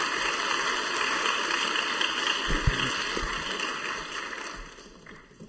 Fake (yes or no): no